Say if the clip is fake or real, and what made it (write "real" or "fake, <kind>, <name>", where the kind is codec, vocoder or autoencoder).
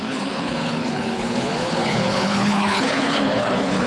fake, codec, HILCodec